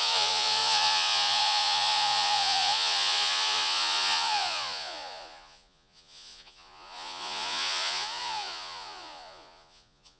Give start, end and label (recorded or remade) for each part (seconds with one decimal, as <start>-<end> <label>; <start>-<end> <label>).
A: 0.0-10.2 remade